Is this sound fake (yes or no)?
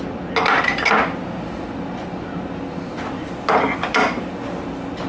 no